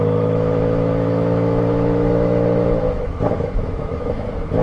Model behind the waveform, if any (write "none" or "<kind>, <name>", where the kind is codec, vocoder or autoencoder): autoencoder, DAC-VAE